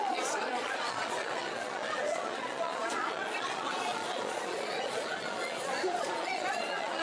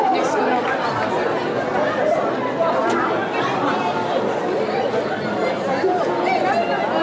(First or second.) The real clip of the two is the second